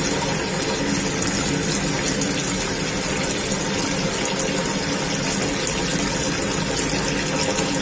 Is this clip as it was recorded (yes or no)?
yes